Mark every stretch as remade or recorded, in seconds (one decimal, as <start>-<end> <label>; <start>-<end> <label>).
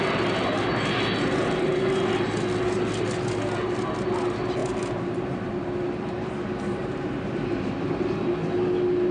0.0-4.6 recorded; 4.6-7.7 remade; 7.7-9.1 recorded